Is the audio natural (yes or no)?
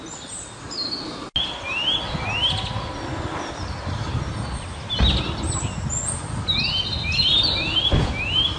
yes